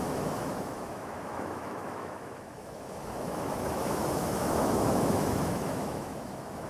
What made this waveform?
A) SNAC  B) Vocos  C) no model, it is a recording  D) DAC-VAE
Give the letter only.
D